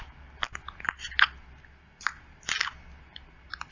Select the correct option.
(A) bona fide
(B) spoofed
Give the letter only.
A